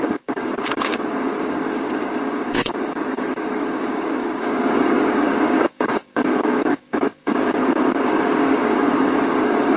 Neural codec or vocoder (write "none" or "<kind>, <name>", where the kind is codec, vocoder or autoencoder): codec, DAC